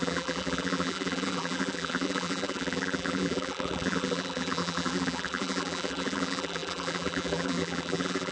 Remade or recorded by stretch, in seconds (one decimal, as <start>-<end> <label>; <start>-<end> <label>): 0.0-8.3 remade